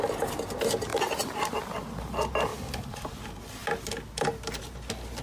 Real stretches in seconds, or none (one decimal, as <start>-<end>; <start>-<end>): 0.0-0.9; 1.8-2.5; 3.1-5.2